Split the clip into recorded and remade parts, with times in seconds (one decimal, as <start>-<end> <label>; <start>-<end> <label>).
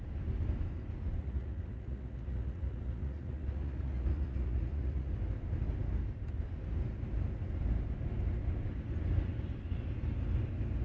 0.0-1.2 recorded; 1.2-5.1 remade; 5.1-10.8 recorded